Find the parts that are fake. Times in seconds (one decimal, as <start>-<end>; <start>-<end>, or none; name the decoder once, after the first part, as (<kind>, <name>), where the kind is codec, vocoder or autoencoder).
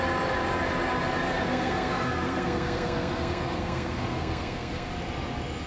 1.5-4.9 (codec, SNAC)